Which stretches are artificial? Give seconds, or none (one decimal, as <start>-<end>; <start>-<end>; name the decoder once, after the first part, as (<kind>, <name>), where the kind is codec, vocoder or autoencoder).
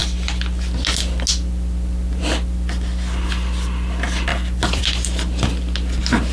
4.3-4.8 (vocoder, BigVGAN v2)